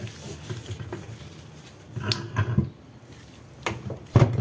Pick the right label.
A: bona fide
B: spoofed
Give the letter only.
A